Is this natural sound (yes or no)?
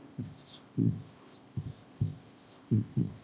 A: no